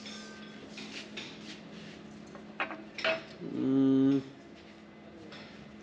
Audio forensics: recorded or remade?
recorded